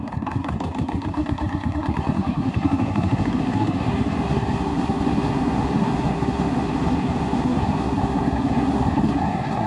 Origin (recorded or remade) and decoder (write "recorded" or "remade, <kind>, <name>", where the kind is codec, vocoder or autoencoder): remade, codec, SNAC